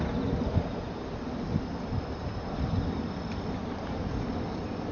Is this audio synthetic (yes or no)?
no